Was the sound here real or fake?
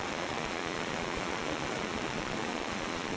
fake